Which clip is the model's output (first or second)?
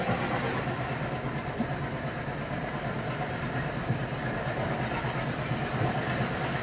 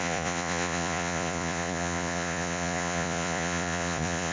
second